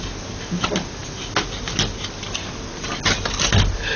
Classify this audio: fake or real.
real